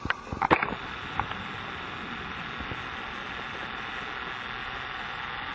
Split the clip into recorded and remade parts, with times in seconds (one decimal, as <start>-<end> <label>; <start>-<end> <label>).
0.0-0.6 recorded; 0.6-3.9 remade; 3.9-4.6 recorded; 4.6-5.5 remade